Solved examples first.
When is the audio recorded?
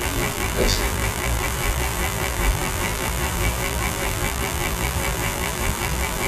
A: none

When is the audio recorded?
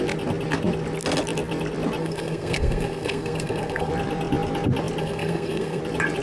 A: 0.0-2.0; 3.9-5.0; 5.8-6.2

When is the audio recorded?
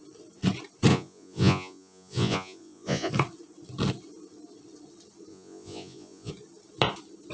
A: 0.0-0.9; 3.1-5.3; 6.3-7.3